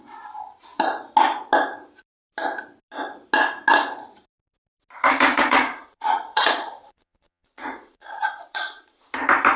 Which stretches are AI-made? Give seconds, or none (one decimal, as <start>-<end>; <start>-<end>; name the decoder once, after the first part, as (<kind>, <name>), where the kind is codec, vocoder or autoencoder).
5.3-9.1 (vocoder, Vocos)